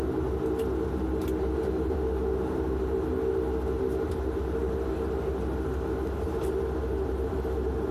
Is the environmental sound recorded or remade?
recorded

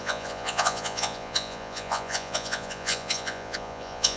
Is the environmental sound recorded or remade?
remade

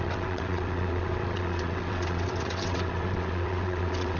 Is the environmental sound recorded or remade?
remade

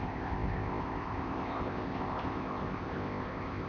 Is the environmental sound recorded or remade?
remade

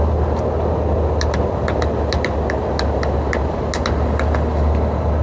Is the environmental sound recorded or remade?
recorded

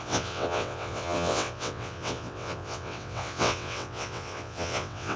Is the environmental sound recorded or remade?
remade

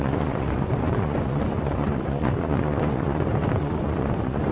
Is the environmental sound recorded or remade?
remade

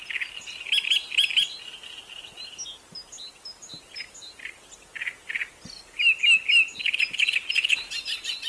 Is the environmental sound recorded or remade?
recorded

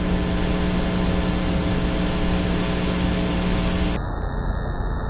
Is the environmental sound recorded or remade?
recorded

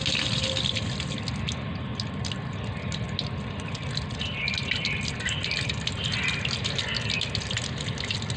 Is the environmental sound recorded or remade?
recorded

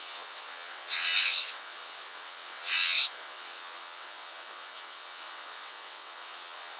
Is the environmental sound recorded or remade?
remade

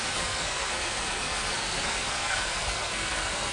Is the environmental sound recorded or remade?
remade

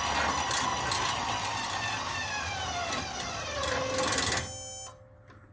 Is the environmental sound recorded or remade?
recorded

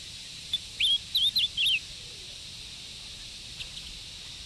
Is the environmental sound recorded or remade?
recorded